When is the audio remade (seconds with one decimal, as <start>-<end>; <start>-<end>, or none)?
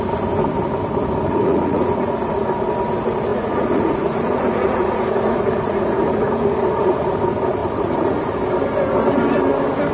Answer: 1.3-2.2; 3.3-7.1; 7.6-8.2